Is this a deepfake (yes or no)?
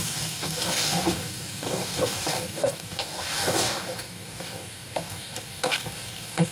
yes